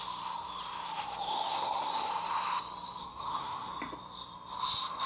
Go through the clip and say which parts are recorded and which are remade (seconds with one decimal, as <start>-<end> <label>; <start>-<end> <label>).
0.0-1.3 recorded; 1.3-1.9 remade; 1.9-3.0 recorded; 3.0-3.7 remade; 3.7-5.1 recorded